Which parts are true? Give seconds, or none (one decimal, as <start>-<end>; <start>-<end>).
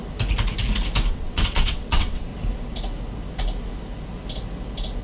0.0-1.1; 2.3-5.0